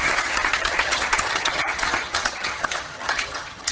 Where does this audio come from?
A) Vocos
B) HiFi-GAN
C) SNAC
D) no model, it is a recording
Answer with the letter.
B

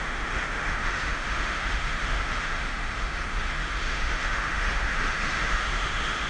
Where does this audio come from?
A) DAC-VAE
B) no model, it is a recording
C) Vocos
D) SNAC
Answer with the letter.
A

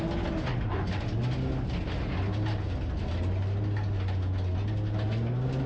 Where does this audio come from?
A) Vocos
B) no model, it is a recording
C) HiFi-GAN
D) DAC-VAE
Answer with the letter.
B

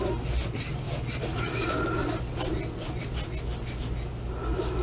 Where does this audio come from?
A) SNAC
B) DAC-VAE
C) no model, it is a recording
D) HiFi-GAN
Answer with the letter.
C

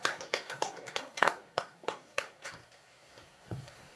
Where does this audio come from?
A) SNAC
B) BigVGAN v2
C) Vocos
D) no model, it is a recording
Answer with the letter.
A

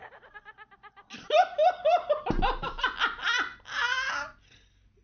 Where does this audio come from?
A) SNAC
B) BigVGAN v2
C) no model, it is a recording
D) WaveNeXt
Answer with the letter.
C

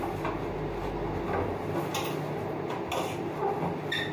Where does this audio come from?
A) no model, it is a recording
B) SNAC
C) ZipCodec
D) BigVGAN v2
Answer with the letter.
A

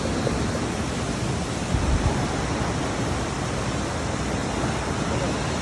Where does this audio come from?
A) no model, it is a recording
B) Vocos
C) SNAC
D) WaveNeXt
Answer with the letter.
A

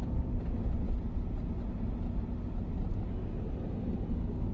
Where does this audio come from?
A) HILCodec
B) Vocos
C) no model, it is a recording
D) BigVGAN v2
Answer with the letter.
C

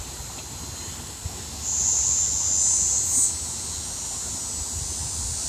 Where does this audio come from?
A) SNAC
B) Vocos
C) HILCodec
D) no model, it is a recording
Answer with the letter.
D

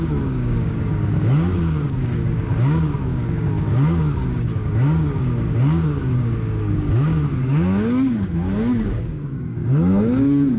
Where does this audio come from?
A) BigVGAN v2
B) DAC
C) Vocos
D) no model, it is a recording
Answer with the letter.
B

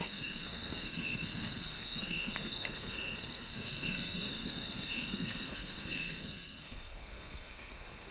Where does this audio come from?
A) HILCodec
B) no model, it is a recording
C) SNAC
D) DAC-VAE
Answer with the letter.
C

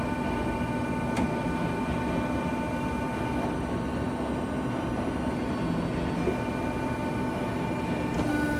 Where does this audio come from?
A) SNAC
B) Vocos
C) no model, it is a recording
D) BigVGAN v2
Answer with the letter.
C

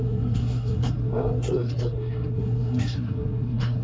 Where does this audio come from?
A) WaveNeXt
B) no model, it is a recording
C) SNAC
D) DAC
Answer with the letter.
C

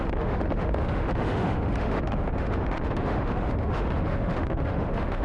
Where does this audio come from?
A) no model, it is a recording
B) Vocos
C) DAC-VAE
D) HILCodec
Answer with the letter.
C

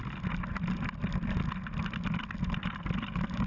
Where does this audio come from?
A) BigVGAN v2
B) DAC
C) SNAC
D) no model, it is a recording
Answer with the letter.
D